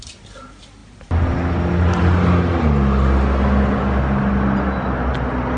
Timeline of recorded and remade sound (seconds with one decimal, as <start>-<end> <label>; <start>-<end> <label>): 0.0-5.6 recorded